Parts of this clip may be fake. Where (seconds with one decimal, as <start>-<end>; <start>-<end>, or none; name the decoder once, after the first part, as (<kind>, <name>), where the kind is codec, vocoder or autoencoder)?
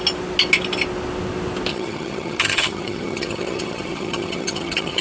1.7-5.0 (vocoder, HiFi-GAN)